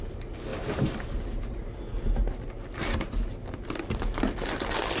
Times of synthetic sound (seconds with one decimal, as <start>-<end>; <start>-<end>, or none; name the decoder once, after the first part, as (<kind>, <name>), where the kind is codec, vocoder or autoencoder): none